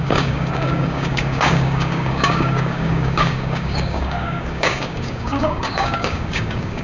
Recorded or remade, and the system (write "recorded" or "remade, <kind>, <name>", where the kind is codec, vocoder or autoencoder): remade, codec, DAC